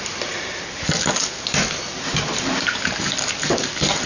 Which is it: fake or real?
real